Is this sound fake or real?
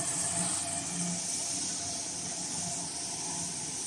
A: real